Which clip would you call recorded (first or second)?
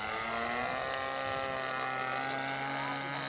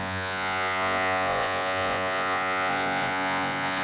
first